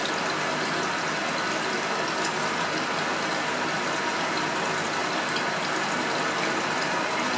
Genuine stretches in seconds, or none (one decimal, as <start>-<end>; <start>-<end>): 0.0-7.4